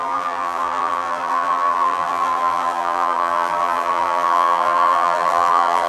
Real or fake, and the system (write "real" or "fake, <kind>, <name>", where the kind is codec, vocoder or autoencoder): fake, vocoder, BigVGAN v2